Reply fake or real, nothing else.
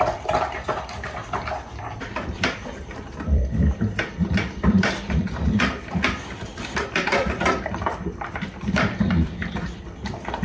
fake